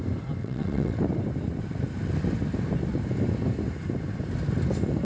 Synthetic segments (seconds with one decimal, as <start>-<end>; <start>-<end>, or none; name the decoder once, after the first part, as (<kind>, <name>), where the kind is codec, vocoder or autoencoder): 0.4-1.0 (vocoder, WaveNeXt)